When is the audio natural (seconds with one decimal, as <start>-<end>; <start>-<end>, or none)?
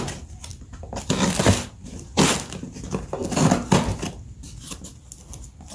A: 0.0-5.7